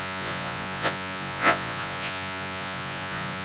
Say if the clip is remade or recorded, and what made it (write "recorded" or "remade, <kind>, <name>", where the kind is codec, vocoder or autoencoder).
remade, vocoder, Vocos